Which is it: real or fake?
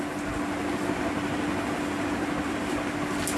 real